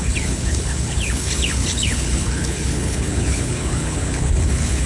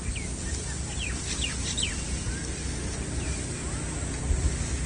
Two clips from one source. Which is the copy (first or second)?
first